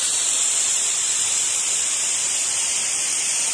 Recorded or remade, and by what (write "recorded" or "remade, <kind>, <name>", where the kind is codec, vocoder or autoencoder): remade, vocoder, BigVGAN v2